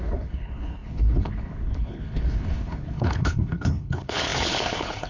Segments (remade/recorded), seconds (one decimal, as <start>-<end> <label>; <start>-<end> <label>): 0.0-5.1 remade